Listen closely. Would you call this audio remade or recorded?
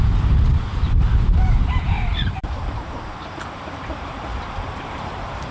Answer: remade